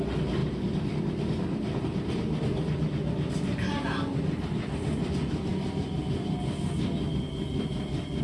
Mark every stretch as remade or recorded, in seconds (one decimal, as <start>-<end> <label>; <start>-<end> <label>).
0.0-8.2 recorded